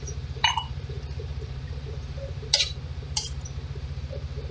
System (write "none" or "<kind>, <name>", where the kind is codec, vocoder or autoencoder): vocoder, BigVGAN v2